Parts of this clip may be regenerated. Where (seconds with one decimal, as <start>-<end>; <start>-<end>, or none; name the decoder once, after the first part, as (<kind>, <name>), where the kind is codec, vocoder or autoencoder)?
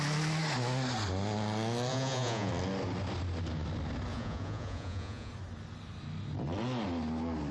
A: 1.9-2.5 (vocoder, Vocos); 4.1-5.3